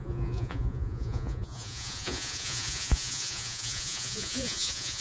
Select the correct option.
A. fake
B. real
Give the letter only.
A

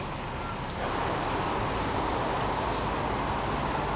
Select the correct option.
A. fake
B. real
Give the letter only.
B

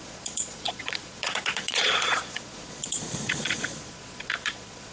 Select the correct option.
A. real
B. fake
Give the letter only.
B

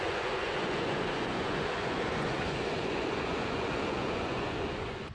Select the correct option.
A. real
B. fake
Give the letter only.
B